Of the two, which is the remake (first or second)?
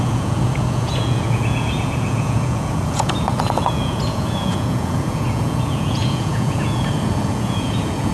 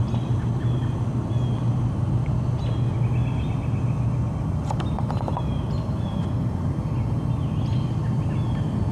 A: first